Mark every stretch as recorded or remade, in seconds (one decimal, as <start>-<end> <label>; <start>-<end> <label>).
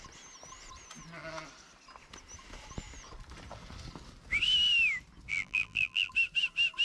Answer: 0.0-5.3 recorded; 5.3-6.1 remade; 6.1-6.8 recorded